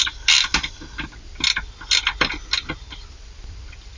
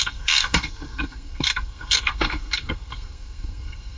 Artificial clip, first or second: second